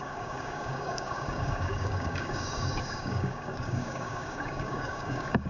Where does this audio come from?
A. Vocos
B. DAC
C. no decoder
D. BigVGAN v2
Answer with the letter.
B